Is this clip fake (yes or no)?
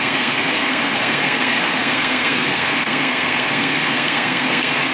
yes